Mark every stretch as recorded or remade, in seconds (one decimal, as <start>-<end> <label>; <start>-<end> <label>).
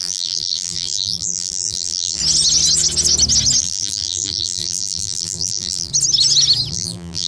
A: 0.0-2.2 remade; 2.2-3.6 recorded; 3.6-5.9 remade; 5.9-6.7 recorded; 6.7-7.3 remade